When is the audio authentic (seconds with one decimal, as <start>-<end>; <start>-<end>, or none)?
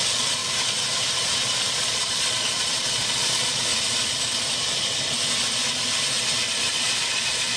0.4-1.8; 3.7-6.7